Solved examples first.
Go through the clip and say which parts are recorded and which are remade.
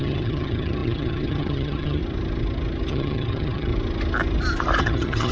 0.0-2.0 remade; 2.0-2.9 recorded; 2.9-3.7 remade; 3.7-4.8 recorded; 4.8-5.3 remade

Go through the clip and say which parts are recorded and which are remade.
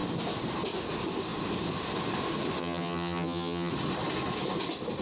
0.0-2.6 recorded; 2.6-3.7 remade; 3.7-5.0 recorded